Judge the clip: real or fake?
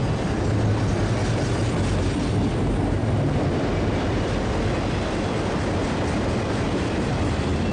real